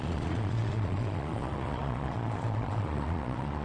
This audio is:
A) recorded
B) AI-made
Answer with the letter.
B